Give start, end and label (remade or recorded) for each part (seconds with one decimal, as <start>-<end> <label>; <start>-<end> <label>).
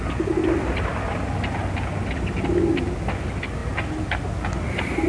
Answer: 0.0-5.1 recorded